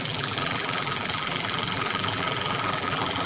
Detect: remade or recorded remade